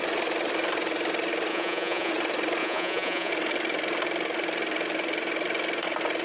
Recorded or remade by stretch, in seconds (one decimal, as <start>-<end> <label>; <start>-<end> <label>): 0.0-1.5 recorded; 1.5-2.1 remade; 2.1-2.6 recorded; 2.6-3.3 remade; 3.3-6.2 recorded

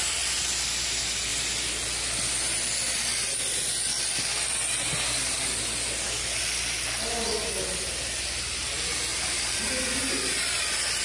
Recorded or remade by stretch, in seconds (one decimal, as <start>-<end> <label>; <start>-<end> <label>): 0.0-11.0 recorded

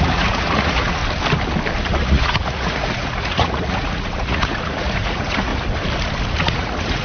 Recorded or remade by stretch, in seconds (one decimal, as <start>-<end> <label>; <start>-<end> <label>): 0.0-1.0 remade; 1.0-1.9 recorded; 1.9-5.5 remade; 5.5-6.4 recorded; 6.4-7.0 remade

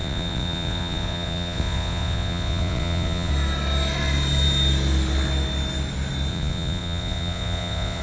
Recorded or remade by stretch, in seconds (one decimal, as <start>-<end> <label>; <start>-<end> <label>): 0.0-3.3 remade; 3.3-6.3 recorded; 6.3-8.0 remade

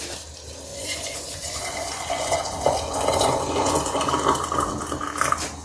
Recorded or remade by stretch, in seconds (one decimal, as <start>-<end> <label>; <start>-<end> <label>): 0.0-0.7 recorded; 0.7-4.1 remade; 4.1-5.6 recorded

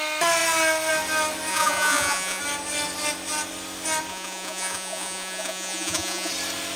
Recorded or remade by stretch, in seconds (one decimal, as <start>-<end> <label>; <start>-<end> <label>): 0.0-1.5 recorded; 1.5-2.4 remade; 2.4-4.1 recorded; 4.1-6.3 remade; 6.3-6.8 recorded